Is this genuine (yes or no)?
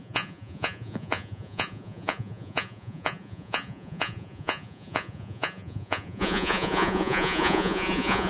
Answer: no